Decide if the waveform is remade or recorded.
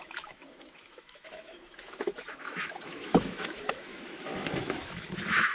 remade